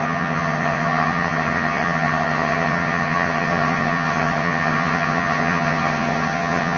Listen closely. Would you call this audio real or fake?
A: fake